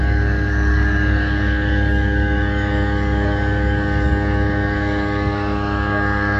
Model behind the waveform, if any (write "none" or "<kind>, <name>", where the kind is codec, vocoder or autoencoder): codec, DAC